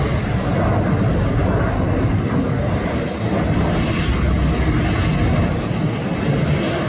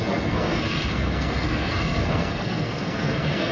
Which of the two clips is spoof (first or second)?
second